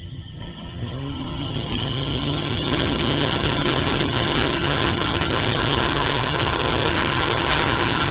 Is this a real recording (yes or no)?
no